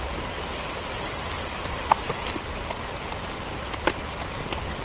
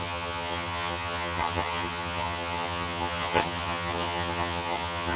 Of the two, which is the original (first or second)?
first